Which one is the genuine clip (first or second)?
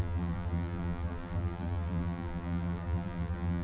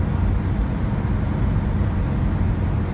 second